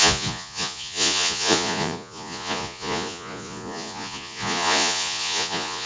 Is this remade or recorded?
remade